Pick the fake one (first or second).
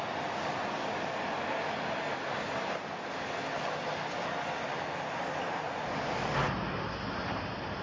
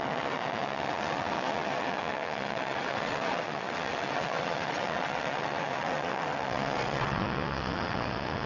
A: second